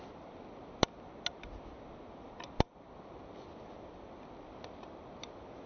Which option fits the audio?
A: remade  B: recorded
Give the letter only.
B